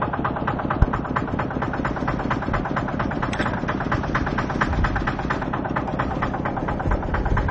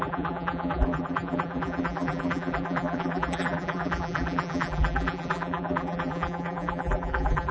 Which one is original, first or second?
first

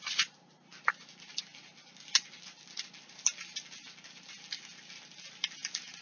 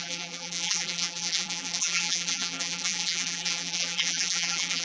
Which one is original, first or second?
first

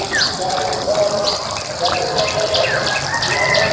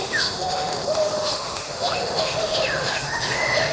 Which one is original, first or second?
first